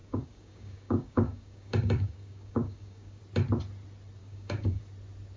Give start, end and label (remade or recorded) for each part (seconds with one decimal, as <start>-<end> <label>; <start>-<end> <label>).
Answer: 0.0-3.2 remade; 3.2-4.2 recorded; 4.2-4.8 remade; 4.8-5.4 recorded